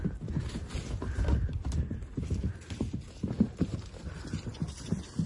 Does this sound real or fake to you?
real